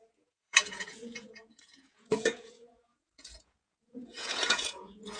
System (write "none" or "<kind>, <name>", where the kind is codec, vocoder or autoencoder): vocoder, Vocos